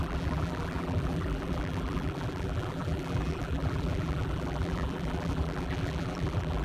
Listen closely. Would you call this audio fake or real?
fake